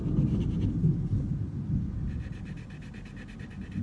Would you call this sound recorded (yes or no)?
yes